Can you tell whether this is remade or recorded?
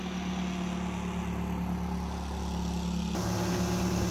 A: recorded